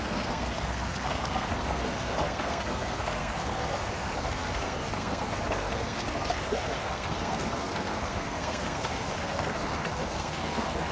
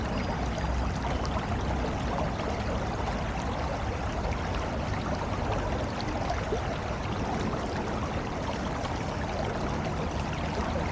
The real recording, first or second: second